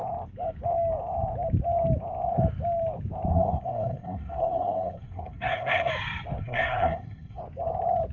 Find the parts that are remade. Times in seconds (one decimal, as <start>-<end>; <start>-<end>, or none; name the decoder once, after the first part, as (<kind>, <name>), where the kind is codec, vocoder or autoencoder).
3.3-5.9 (codec, SNAC); 6.4-7.4